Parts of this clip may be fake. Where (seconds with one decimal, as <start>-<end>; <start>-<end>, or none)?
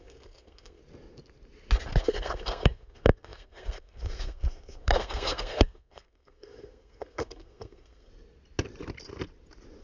0.0-0.8; 2.0-8.1